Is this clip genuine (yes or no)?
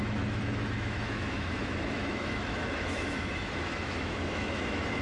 no